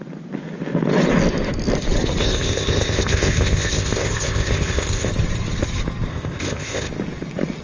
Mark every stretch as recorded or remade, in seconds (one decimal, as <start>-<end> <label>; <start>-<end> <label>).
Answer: 0.0-2.2 recorded; 2.2-5.1 remade; 5.1-6.1 recorded; 6.1-6.9 remade; 6.9-7.6 recorded